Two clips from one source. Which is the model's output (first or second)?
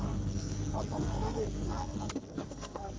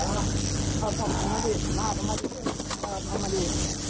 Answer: first